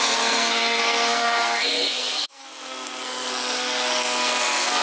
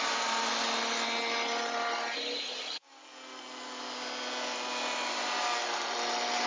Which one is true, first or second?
second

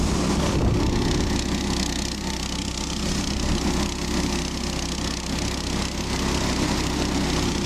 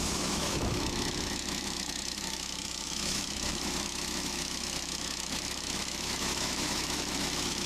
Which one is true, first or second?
first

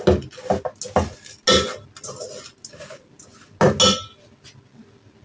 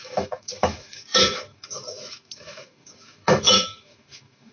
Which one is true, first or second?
first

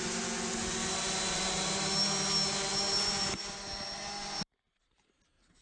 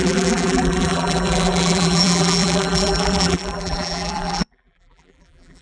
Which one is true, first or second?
first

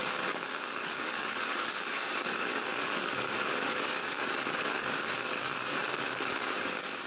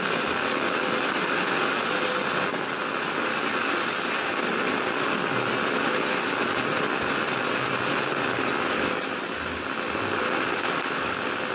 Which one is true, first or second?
second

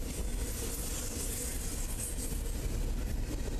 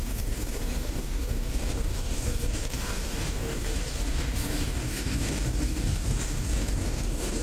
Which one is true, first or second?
first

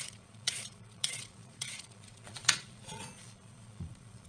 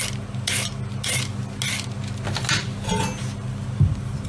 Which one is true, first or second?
second